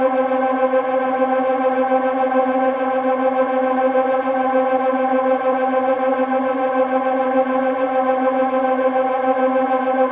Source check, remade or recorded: remade